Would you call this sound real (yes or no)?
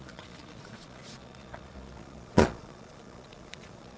no